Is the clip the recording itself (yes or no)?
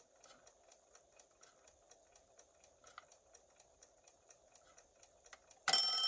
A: yes